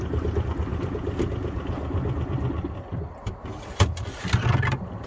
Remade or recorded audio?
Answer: recorded